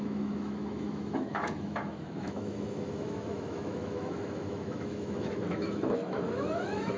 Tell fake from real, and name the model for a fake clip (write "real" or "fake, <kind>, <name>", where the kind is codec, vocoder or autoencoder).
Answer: fake, autoencoder, DAC-VAE